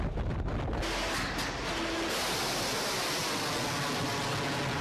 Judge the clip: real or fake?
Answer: real